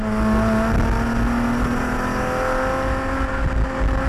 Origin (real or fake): real